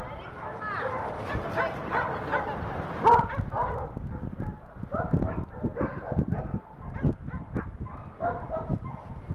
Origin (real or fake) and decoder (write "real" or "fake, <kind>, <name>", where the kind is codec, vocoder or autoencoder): real